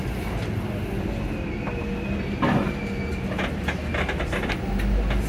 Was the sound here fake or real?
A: real